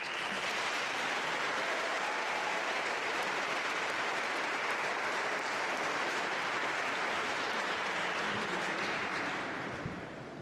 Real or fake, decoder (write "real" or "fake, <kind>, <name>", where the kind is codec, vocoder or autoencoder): fake, vocoder, BigVGAN v2